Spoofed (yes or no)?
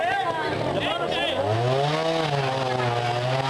no